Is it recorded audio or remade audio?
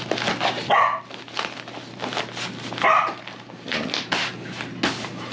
recorded